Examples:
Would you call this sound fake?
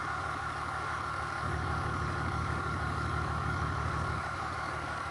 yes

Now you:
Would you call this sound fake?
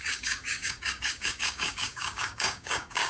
yes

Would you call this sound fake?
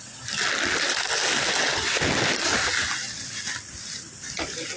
no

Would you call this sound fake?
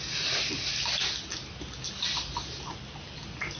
no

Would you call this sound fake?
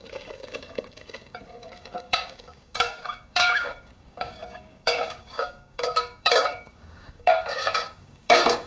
yes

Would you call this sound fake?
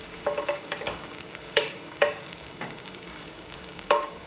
yes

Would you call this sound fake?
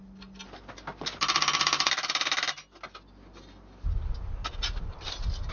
no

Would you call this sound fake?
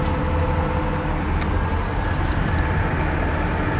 no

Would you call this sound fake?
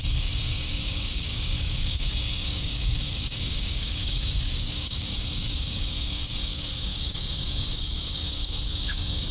yes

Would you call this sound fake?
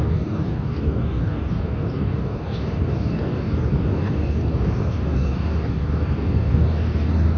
yes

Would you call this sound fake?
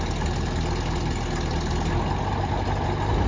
no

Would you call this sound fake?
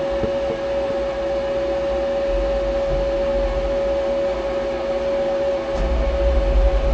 no